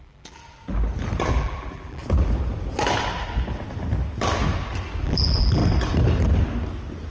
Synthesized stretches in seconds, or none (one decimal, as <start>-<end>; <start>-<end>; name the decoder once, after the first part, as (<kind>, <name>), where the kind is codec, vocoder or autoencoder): 0.0-0.6 (vocoder, BigVGAN v2); 1.3-2.0; 5.0-5.6